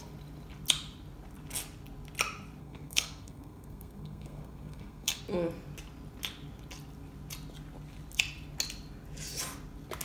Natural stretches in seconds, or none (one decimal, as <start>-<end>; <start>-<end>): 0.0-2.6; 5.2-10.0